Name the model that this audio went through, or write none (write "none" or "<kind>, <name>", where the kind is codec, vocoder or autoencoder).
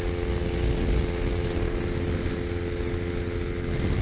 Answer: none